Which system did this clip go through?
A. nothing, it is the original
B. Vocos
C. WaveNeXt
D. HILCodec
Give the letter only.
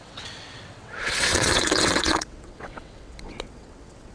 C